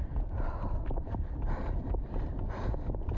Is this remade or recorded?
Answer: recorded